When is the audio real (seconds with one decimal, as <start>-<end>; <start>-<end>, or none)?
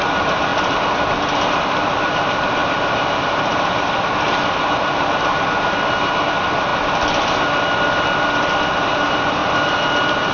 0.5-1.6; 6.7-8.9; 9.4-10.3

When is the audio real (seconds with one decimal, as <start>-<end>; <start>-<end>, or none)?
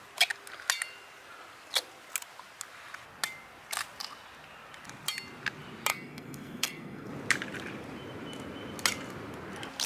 0.0-5.9; 7.1-9.9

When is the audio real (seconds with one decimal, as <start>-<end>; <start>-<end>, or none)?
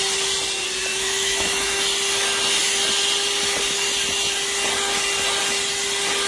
0.0-0.9; 1.8-6.3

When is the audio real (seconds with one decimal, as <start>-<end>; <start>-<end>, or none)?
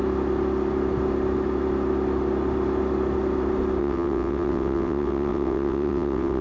0.0-3.8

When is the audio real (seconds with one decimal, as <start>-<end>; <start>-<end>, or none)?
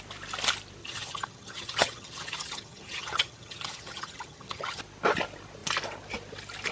0.0-0.8; 4.8-6.7